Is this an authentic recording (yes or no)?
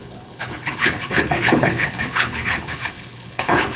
no